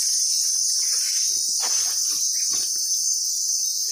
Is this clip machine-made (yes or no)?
no